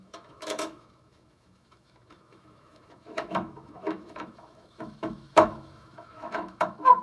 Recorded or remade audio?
remade